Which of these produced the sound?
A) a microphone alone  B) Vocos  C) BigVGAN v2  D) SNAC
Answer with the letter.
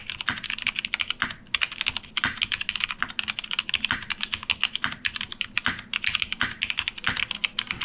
A